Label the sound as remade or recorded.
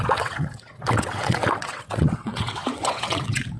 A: remade